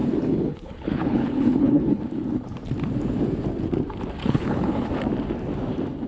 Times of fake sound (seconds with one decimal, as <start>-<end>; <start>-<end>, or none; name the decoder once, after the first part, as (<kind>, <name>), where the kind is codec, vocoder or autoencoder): 0.0-2.0 (codec, HILCodec); 4.2-4.9